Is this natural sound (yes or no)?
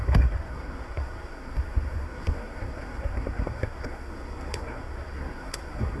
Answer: no